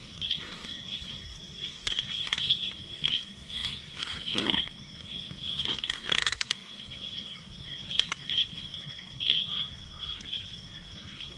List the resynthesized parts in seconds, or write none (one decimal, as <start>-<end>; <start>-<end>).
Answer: 0.0-11.4